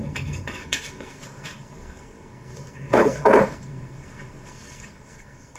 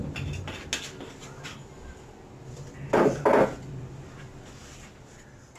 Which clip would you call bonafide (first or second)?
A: second